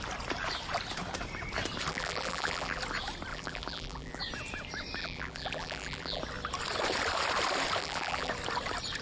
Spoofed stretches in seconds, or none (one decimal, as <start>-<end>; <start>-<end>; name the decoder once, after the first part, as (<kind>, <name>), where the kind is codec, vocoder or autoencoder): 1.9-2.8 (vocoder, BigVGAN v2); 3.3-4.2; 5.0-6.2; 7.8-8.3